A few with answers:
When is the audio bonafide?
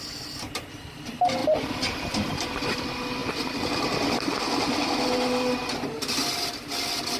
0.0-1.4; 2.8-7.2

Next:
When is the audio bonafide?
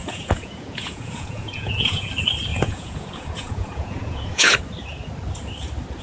2.1-2.5; 4.6-6.0